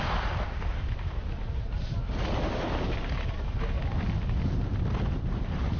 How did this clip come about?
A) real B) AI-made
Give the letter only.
A